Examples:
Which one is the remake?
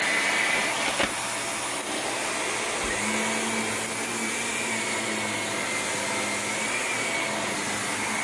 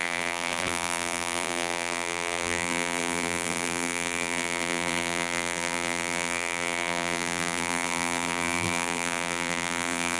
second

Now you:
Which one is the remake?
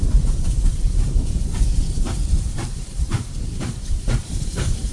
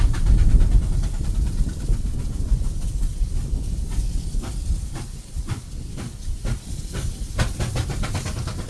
first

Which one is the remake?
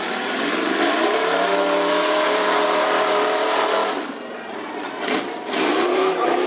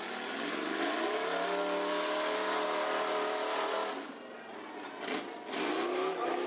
first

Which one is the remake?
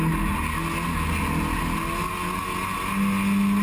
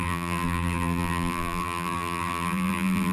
second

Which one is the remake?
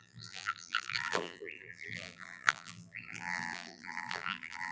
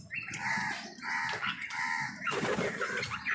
first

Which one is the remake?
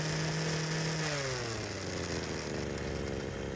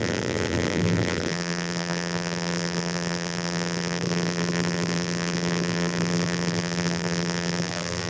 second